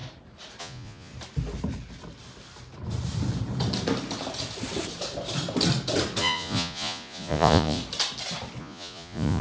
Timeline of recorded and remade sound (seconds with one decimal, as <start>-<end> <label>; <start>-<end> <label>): 0.0-0.6 recorded; 0.6-1.1 remade; 1.1-6.2 recorded; 6.2-7.8 remade; 7.8-8.6 recorded; 8.6-9.4 remade